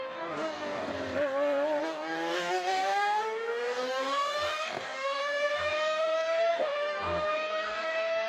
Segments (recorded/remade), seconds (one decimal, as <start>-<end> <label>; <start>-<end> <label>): 0.0-0.9 remade; 0.9-1.8 recorded; 1.8-8.3 remade